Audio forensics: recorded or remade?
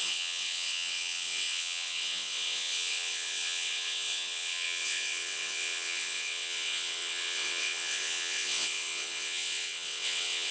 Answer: remade